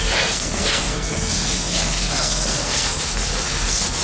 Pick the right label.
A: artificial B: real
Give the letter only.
A